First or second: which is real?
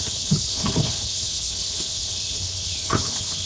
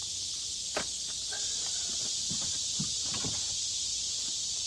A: second